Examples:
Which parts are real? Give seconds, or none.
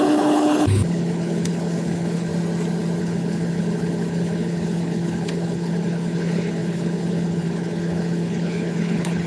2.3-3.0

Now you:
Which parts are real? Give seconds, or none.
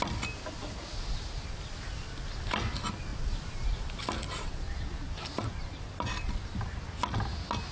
0.0-7.7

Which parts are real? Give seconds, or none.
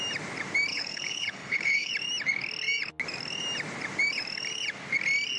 0.0-0.7; 1.9-5.4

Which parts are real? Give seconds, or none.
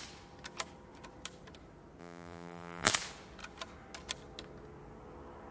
0.0-2.0; 2.9-5.5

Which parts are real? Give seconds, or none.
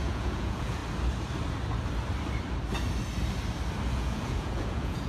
0.8-3.9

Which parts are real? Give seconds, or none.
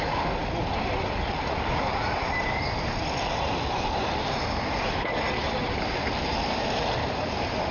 0.0-7.7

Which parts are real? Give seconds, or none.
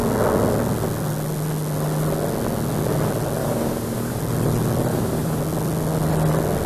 0.0-3.4; 4.2-4.9; 5.4-6.7